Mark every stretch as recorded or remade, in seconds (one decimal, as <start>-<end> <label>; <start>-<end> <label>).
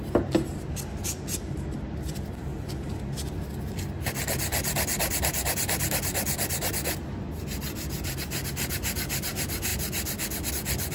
0.0-10.9 recorded